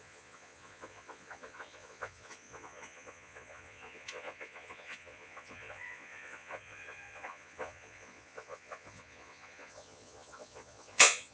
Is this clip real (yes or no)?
no